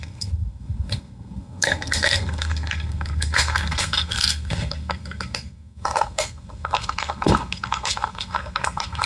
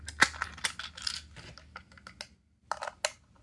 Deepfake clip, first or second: first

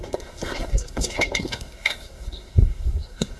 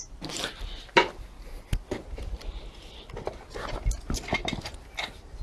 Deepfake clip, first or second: first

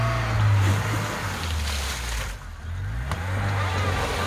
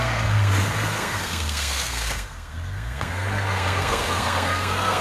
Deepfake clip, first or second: second